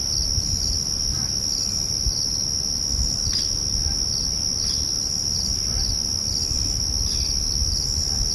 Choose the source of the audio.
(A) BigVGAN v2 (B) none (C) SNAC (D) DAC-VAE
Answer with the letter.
B